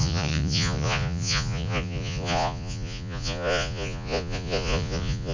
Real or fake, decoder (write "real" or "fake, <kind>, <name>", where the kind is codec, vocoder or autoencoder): fake, vocoder, Vocos